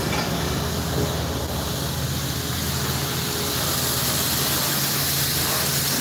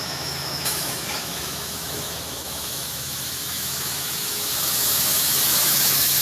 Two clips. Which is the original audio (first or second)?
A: first